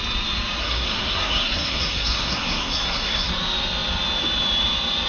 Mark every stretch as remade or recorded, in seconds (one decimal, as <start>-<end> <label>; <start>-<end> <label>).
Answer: 0.0-0.6 recorded; 0.6-3.3 remade; 3.3-5.1 recorded